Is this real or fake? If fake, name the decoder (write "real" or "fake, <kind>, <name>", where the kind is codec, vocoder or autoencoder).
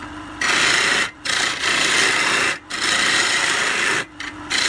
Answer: real